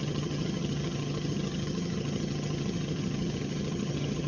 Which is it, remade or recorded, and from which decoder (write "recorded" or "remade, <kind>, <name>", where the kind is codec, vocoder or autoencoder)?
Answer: remade, vocoder, HiFi-GAN